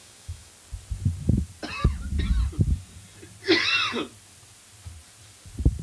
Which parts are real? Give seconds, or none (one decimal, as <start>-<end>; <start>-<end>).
0.5-5.8